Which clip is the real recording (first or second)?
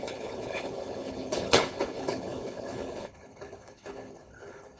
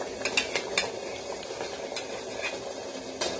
second